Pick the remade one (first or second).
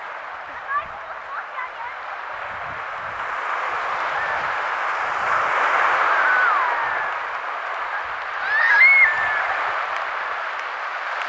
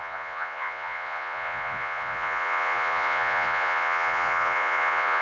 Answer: second